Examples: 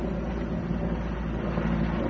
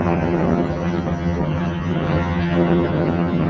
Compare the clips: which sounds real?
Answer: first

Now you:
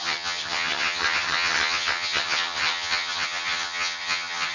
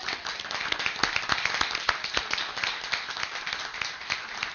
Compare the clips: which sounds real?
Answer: second